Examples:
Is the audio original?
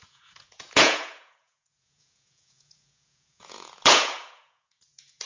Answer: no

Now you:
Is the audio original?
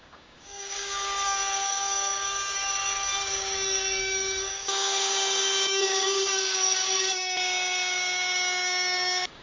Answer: no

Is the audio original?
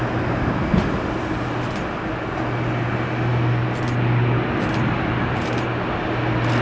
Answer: yes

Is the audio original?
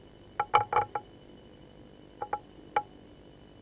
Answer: yes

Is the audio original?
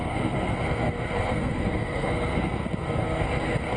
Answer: no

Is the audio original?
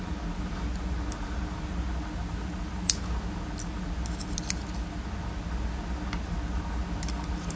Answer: yes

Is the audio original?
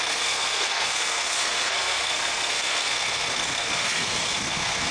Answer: no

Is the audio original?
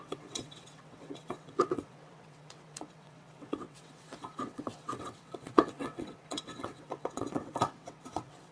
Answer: no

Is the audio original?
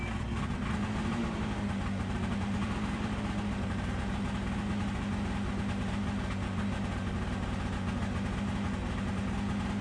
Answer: yes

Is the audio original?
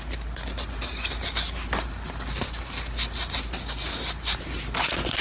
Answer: yes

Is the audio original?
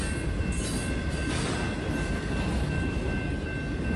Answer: yes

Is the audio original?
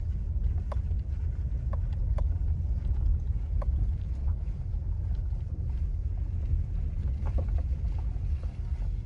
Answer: yes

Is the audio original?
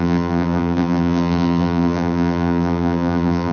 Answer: no